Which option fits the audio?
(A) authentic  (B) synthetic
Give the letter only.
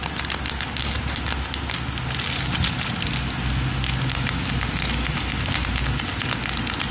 A